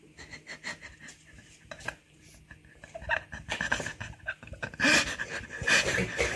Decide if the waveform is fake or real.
real